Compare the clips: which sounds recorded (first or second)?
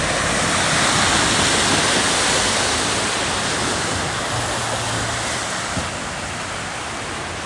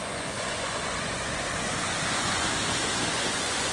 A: first